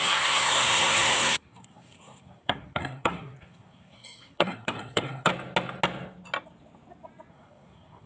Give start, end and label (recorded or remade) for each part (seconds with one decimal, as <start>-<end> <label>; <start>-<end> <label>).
0.0-5.3 remade; 5.3-7.3 recorded; 7.3-8.1 remade